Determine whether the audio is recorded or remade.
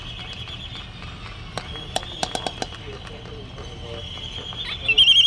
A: recorded